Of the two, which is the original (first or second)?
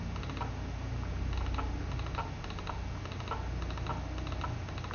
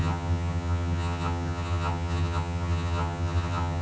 first